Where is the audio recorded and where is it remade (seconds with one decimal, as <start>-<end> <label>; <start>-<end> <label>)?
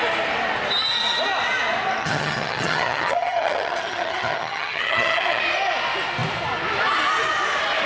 0.0-2.0 recorded; 2.0-5.4 remade; 5.4-7.9 recorded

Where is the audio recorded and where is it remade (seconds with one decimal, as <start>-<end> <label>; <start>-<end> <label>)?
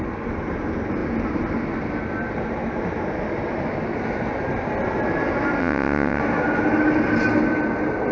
0.0-5.6 recorded; 5.6-6.2 remade; 6.2-8.1 recorded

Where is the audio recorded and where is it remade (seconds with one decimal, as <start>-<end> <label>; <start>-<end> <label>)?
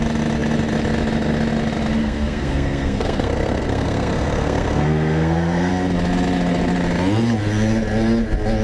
0.0-2.0 recorded; 2.0-5.7 remade; 5.7-8.6 recorded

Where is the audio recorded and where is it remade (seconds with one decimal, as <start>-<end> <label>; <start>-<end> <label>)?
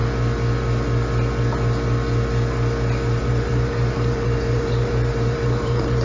0.0-3.2 recorded; 3.2-6.0 remade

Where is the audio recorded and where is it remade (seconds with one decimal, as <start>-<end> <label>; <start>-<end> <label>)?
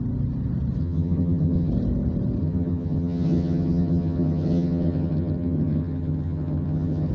0.0-0.8 recorded; 0.8-1.7 remade; 1.7-2.4 recorded; 2.4-7.1 remade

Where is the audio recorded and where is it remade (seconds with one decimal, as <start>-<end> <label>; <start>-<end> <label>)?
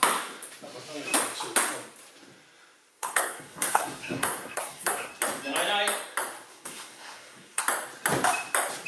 0.0-2.9 recorded; 2.9-5.1 remade; 5.1-6.5 recorded; 6.5-7.6 remade; 7.6-8.9 recorded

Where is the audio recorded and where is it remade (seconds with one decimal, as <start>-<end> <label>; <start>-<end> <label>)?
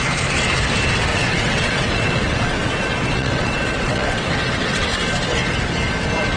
0.0-1.1 recorded; 1.1-4.9 remade; 4.9-6.4 recorded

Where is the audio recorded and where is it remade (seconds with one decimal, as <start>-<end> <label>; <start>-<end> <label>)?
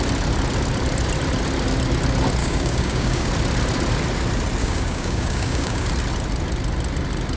0.0-2.4 recorded; 2.4-3.3 remade; 3.3-4.6 recorded; 4.6-5.9 remade; 5.9-7.4 recorded